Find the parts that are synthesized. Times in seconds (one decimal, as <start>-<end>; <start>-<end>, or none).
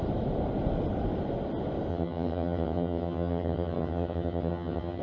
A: 1.9-5.0